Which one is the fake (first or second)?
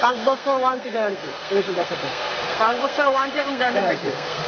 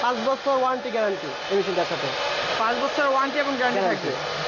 first